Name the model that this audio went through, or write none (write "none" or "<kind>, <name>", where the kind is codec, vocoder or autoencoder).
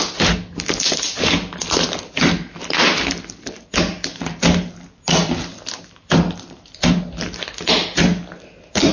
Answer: none